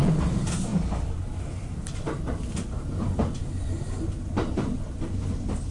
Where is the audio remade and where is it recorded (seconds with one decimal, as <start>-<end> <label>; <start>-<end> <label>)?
0.0-5.7 recorded

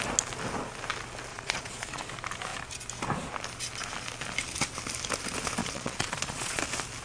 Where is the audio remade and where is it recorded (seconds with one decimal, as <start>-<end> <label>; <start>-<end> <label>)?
0.0-1.3 recorded; 1.3-2.0 remade; 2.0-5.6 recorded; 5.6-6.6 remade; 6.6-7.0 recorded

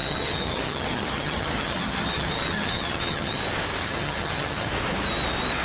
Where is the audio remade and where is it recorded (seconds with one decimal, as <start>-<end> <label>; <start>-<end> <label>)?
0.0-3.4 remade; 3.4-3.8 recorded; 3.8-4.7 remade; 4.7-5.6 recorded

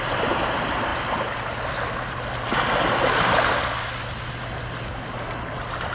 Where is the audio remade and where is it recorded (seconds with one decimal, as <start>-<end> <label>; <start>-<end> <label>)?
0.0-5.9 recorded

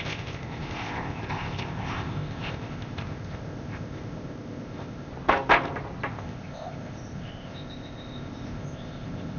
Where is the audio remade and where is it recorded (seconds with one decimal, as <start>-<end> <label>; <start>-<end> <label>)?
0.0-5.1 remade; 5.1-6.1 recorded; 6.1-9.4 remade